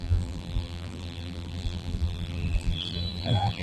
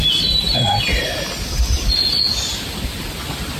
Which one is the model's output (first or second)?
first